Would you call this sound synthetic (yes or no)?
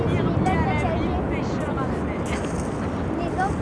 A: no